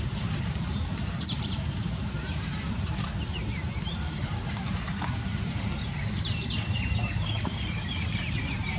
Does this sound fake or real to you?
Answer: fake